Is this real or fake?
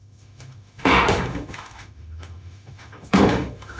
fake